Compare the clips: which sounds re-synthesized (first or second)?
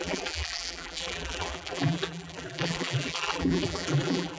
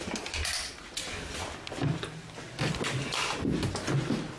first